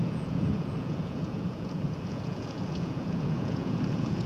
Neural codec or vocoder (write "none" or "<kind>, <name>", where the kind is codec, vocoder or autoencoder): vocoder, Vocos